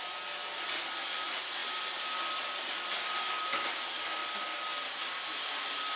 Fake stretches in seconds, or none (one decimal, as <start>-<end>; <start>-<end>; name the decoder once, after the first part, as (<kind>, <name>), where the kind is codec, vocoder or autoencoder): none